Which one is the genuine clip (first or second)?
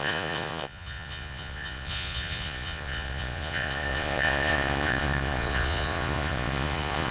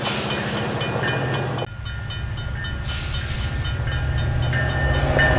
second